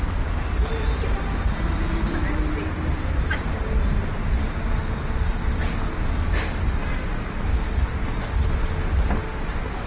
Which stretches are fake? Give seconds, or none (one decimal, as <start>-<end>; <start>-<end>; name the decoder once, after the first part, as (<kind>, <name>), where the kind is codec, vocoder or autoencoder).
none